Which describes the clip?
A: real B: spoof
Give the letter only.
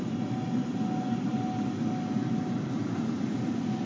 A